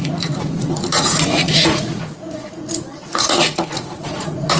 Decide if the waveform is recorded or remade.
remade